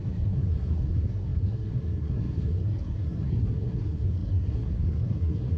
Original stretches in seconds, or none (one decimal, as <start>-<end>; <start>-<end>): none